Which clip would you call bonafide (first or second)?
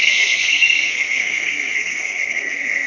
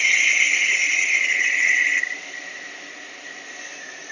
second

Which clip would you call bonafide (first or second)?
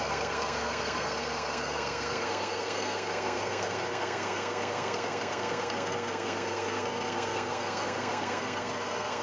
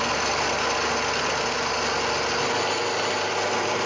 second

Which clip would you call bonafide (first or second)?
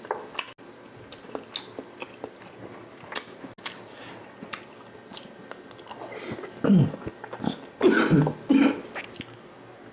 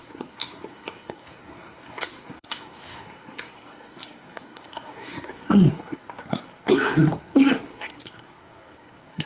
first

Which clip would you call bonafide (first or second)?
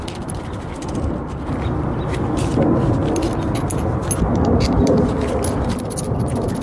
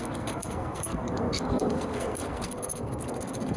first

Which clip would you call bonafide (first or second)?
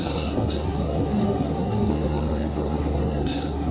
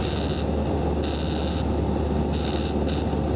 second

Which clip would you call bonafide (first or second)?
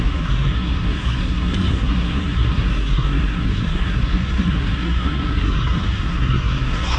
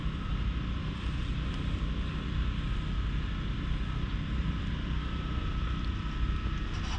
second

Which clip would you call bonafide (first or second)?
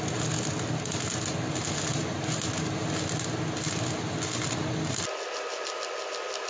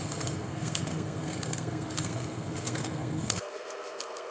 first